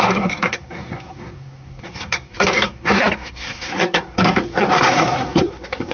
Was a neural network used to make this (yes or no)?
yes